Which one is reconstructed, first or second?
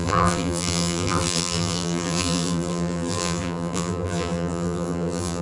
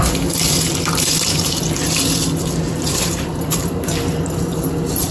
first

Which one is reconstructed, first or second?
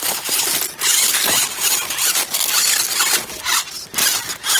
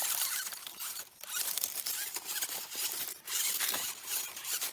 second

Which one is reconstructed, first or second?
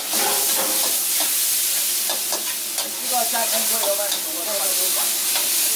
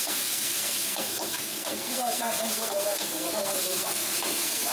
second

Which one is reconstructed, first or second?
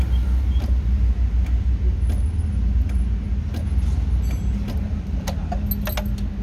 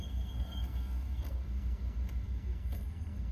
second